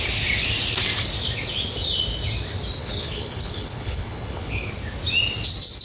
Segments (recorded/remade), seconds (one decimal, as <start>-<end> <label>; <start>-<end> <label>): 0.0-2.8 recorded; 2.8-4.7 remade; 4.7-5.8 recorded